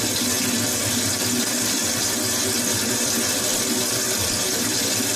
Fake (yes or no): yes